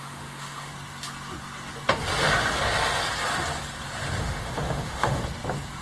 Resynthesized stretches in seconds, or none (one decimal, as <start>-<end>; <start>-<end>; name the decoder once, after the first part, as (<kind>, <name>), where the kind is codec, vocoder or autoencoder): 0.0-0.7 (autoencoder, DAC-VAE); 4.2-5.2